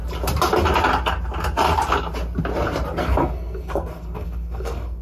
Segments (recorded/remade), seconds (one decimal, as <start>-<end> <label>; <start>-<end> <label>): 0.0-3.0 recorded; 3.0-5.0 remade